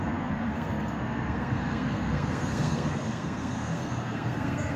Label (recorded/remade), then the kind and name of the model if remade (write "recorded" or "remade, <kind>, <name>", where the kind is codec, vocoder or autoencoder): remade, codec, SNAC